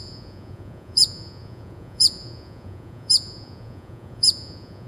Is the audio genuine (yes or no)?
no